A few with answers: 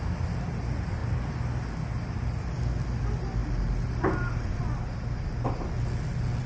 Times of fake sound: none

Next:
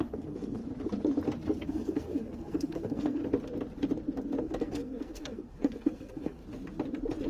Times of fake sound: 0.0-0.6 (codec, SNAC); 1.6-3.2; 4.4-6.4